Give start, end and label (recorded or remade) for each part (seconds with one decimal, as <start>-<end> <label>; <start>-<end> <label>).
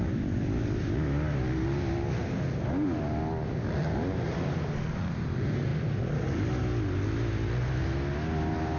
0.0-8.8 recorded